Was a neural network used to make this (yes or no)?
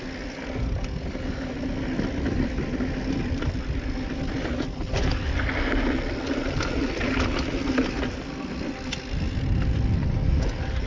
no